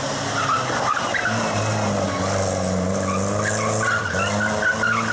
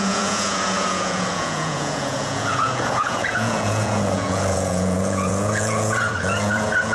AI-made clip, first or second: second